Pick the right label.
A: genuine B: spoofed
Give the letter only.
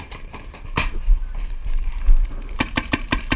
B